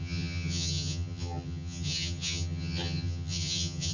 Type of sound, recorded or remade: remade